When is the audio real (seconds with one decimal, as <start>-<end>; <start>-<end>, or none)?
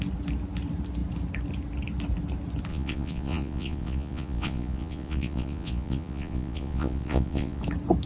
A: 0.0-2.7; 7.6-8.1